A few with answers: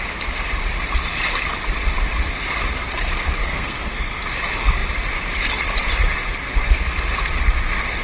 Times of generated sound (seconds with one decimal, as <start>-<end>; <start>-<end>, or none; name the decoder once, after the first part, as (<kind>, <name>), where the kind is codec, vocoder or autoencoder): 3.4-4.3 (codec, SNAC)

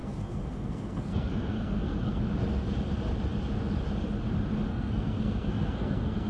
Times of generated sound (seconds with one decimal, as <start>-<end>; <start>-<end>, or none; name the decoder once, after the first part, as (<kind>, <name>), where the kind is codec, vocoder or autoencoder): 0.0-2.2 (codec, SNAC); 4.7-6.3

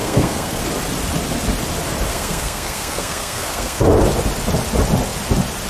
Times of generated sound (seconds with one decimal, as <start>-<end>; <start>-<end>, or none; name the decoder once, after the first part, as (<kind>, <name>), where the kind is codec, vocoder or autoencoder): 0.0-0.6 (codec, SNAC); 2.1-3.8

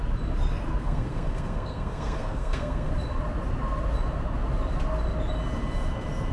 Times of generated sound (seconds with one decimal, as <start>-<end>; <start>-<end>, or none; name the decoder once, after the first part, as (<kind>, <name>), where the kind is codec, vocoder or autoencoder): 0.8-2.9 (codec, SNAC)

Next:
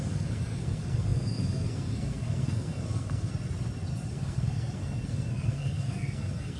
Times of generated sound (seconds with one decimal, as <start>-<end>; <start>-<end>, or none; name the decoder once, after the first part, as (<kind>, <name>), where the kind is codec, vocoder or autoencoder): 0.0-3.3 (codec, SNAC); 4.1-6.6

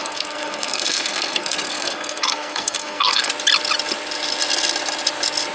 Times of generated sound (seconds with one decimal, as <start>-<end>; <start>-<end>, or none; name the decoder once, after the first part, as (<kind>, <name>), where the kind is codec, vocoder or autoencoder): 0.0-3.3 (codec, SNAC)